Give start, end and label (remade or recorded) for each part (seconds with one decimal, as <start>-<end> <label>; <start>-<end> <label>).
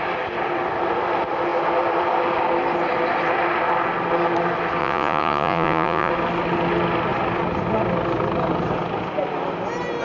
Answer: 0.0-4.8 recorded; 4.8-6.1 remade; 6.1-10.0 recorded